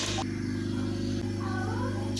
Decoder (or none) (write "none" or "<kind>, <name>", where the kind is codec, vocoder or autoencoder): none